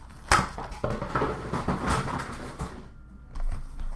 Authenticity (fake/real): real